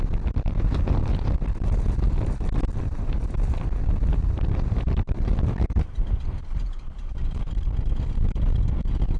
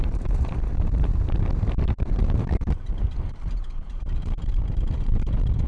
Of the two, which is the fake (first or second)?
second